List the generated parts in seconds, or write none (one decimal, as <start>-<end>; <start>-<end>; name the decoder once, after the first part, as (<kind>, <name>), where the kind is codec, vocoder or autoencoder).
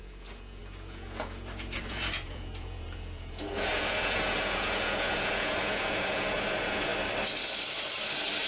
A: 0.0-6.9 (vocoder, Vocos)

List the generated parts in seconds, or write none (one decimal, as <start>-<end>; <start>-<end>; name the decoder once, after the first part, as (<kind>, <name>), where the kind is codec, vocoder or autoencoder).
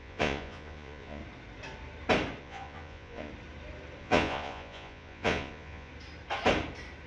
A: 0.0-1.2 (vocoder, Vocos); 2.4-3.3; 4.0-5.9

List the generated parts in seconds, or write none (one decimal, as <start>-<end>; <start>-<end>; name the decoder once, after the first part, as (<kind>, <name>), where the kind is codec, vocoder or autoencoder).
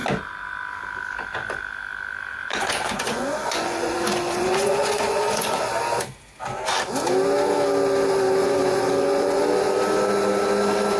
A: 2.3-5.7 (vocoder, Vocos); 8.4-9.4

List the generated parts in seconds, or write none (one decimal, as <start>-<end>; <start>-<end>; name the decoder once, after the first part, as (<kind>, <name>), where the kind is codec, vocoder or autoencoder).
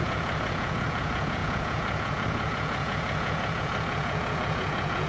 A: 0.0-5.1 (vocoder, Vocos)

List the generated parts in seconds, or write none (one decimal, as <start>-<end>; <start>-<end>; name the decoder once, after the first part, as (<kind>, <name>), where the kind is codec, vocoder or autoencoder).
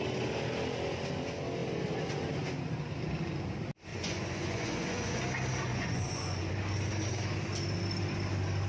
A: 3.9-5.2 (vocoder, Vocos); 5.7-6.5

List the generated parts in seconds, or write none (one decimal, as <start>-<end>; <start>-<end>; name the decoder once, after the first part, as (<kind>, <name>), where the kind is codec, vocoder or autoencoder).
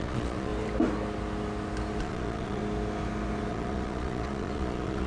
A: 0.0-0.5 (vocoder, Vocos); 2.0-2.6; 3.5-5.1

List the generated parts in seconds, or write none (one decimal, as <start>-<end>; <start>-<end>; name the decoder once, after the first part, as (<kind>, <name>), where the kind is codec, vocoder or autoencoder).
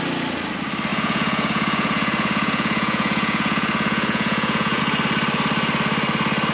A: 0.9-4.8 (vocoder, Vocos)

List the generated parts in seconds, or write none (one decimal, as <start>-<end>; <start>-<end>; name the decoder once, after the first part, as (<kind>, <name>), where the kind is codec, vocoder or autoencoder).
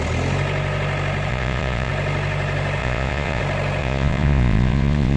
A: 1.3-1.9 (vocoder, Vocos); 2.8-3.4; 3.8-5.2